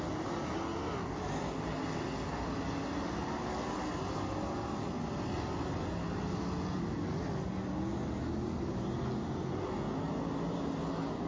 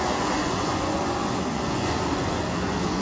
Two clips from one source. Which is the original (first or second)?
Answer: first